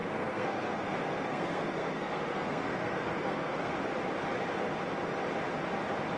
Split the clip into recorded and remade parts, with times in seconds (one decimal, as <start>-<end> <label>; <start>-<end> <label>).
0.0-3.7 remade; 3.7-6.2 recorded

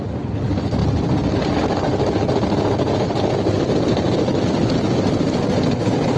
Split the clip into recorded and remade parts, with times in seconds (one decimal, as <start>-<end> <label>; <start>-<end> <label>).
0.0-6.2 recorded

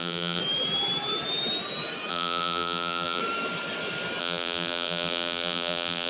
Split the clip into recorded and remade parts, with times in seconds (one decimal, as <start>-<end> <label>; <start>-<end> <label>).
0.0-0.4 remade; 0.4-2.1 recorded; 2.1-3.2 remade; 3.2-4.2 recorded; 4.2-6.1 remade

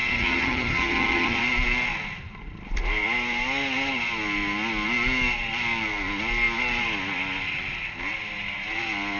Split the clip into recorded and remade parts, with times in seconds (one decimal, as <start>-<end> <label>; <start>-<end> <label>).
0.0-1.4 remade; 1.4-9.2 recorded

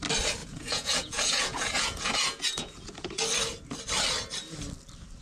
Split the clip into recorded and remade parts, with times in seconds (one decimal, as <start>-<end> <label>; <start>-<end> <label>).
0.0-0.4 recorded; 0.4-3.2 remade; 3.2-5.2 recorded